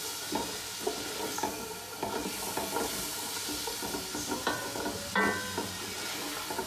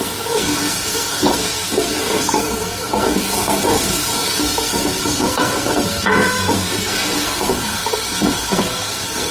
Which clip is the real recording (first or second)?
first